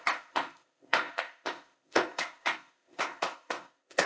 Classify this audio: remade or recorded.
remade